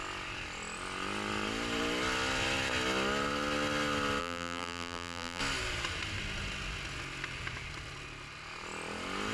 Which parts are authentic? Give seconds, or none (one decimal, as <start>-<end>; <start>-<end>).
0.0-4.2; 5.4-9.3